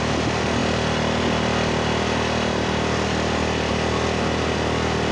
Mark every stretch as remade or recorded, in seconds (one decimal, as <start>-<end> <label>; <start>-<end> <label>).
0.0-5.1 recorded